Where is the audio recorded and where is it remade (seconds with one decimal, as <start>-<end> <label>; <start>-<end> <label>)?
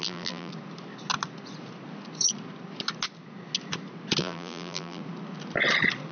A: 0.0-0.5 remade; 0.5-4.2 recorded; 4.2-5.0 remade; 5.0-6.1 recorded